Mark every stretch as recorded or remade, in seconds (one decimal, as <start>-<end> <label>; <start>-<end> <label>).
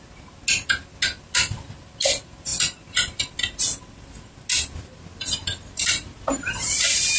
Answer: 0.0-7.2 recorded